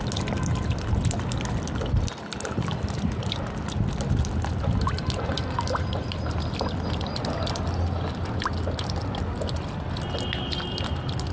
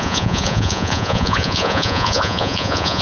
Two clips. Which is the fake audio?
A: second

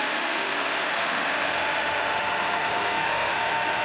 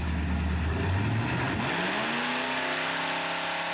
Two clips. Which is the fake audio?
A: first